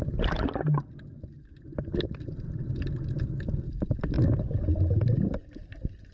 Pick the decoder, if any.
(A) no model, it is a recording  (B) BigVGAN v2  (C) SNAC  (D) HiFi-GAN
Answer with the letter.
A